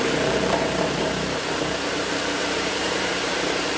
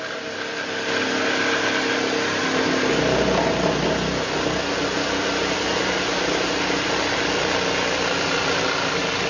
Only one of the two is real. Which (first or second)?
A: second